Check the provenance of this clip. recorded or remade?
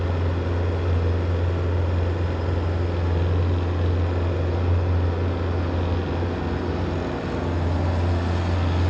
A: recorded